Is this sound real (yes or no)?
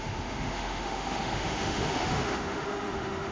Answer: no